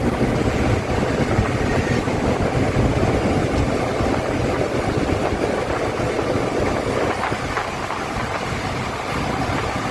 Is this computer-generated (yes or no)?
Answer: no